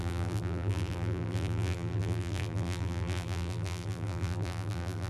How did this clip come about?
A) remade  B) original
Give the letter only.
A